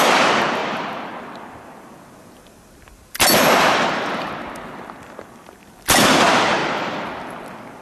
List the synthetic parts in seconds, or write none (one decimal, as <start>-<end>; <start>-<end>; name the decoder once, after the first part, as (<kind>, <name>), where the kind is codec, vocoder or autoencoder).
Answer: 0.6-1.1 (vocoder, BigVGAN v2)